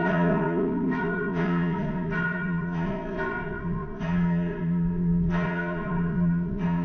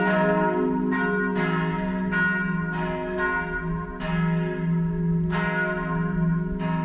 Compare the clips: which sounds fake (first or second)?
first